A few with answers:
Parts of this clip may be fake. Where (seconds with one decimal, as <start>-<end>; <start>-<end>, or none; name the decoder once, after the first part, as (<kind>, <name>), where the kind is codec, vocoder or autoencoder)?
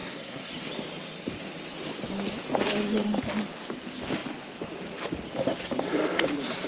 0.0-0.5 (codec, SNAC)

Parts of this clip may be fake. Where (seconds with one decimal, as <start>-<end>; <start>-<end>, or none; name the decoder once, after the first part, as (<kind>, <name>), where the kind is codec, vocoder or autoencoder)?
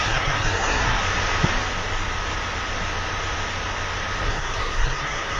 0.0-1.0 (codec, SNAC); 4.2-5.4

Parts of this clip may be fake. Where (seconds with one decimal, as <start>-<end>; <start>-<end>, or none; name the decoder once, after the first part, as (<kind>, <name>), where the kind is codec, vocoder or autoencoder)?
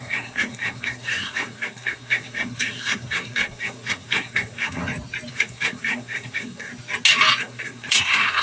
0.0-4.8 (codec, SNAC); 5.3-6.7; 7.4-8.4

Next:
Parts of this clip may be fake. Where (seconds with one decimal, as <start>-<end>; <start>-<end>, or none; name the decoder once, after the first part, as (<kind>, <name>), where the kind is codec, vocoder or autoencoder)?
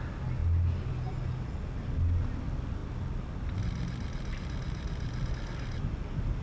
none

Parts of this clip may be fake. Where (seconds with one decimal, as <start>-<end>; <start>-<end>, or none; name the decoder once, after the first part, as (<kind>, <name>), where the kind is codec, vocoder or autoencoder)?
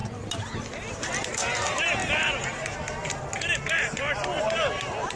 none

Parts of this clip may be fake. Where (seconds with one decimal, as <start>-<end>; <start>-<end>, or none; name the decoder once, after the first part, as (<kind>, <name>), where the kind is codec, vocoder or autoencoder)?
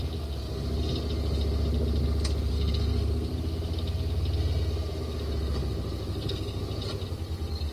2.5-3.3 (codec, SNAC); 6.1-6.6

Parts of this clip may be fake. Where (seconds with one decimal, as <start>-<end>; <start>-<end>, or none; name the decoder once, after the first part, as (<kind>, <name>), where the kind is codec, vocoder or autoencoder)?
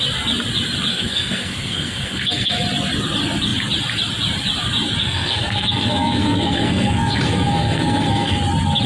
0.9-2.5 (codec, SNAC); 5.0-8.4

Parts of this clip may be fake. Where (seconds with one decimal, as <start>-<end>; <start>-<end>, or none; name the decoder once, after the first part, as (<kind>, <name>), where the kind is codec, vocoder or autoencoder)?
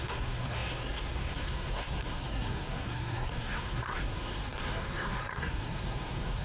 0.0-6.4 (codec, SNAC)